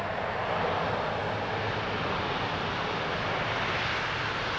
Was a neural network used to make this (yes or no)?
no